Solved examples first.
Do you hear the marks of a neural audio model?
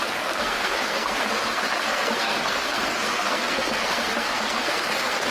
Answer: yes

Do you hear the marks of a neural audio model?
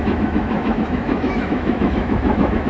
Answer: yes